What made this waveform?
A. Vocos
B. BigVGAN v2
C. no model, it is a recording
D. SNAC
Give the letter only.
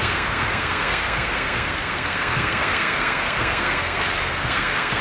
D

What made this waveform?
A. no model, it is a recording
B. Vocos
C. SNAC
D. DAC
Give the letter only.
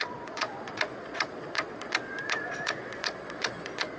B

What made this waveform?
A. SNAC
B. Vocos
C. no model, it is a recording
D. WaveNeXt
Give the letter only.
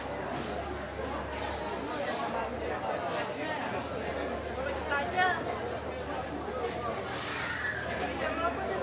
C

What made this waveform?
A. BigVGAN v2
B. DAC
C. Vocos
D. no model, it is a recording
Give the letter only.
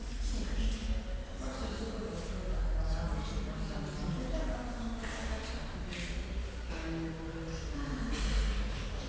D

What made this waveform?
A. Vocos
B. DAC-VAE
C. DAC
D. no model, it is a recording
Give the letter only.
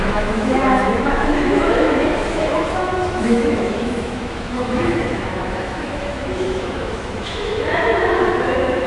B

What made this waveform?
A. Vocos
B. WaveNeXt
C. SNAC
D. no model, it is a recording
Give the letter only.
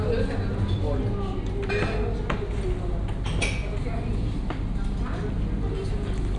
D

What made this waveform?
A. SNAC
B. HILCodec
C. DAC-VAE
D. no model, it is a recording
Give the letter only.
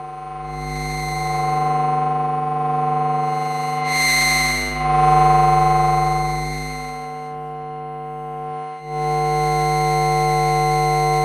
D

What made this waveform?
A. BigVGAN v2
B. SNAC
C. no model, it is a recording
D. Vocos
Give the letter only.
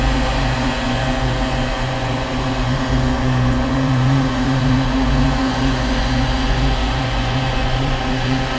D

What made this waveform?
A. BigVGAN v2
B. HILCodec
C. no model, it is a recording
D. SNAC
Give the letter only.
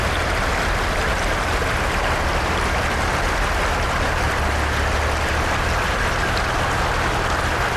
C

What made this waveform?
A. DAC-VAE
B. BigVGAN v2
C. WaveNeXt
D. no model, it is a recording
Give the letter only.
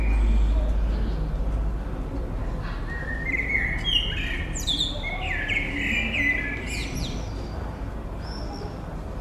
D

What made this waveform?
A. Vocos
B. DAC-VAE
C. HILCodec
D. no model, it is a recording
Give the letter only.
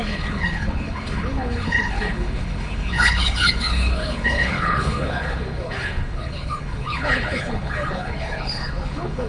C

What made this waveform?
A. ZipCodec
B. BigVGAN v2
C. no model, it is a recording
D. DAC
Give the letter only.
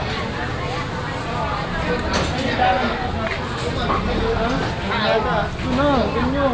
C